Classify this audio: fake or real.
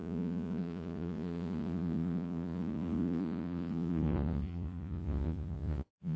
fake